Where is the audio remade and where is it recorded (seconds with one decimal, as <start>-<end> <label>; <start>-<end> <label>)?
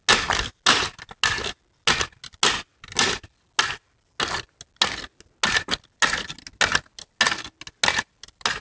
0.0-8.6 recorded